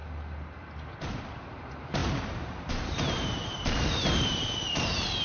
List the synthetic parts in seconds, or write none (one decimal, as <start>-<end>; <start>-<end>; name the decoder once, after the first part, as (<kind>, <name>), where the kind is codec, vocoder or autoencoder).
1.1-5.2 (vocoder, BigVGAN v2)